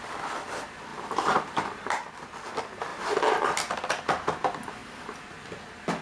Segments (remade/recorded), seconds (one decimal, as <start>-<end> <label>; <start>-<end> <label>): 0.0-0.9 recorded; 0.9-2.1 remade; 2.1-2.9 recorded; 2.9-3.6 remade; 3.6-6.0 recorded

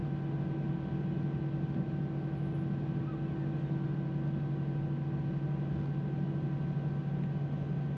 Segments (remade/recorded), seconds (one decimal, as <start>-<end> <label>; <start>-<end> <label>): 0.0-8.0 recorded

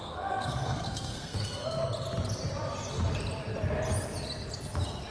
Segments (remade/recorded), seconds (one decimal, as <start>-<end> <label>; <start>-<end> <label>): 0.0-1.8 remade; 1.8-5.1 recorded